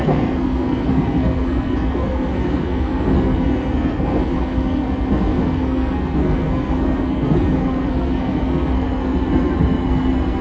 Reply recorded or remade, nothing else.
remade